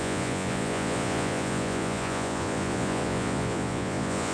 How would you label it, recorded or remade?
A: remade